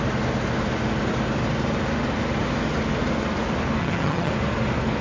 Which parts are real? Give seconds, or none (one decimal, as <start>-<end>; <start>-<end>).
0.0-3.8; 4.3-5.0